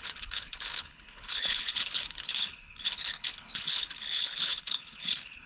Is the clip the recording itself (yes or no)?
no